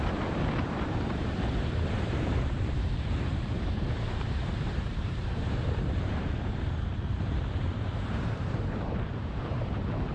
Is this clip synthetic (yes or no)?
yes